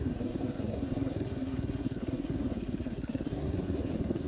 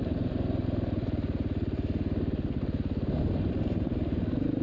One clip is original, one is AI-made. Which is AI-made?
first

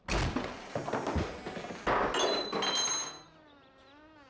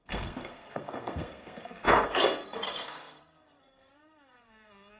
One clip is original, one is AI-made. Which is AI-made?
second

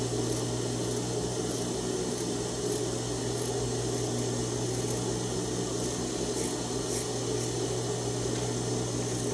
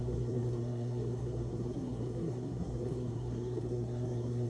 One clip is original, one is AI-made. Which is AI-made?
second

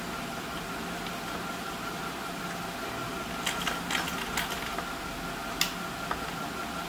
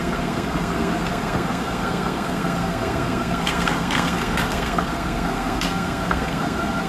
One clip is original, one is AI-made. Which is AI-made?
second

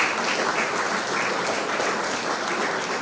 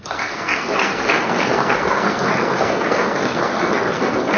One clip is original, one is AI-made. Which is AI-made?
second